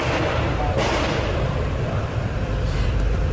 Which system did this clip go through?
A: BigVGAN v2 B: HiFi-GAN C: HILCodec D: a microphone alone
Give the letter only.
A